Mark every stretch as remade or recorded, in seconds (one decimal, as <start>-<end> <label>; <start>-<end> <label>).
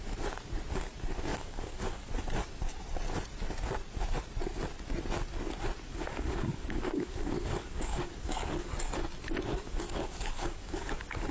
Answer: 0.0-1.3 recorded; 1.3-2.1 remade; 2.1-5.9 recorded; 5.9-8.7 remade; 8.7-9.5 recorded; 9.5-11.3 remade